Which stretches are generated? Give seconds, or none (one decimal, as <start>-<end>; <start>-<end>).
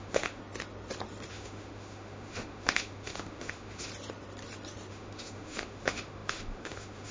0.0-0.4; 1.3-3.9; 4.9-7.1